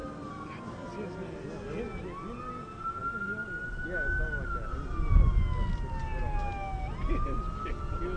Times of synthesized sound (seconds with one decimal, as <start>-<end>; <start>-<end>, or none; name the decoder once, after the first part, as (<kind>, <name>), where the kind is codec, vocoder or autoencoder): none